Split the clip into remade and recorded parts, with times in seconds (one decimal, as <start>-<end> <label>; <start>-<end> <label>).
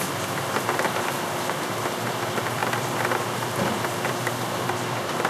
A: 0.0-5.3 recorded